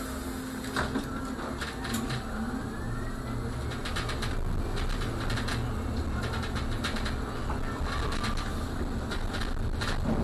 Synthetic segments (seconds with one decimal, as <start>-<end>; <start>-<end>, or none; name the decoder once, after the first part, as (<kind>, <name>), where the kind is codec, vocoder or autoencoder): none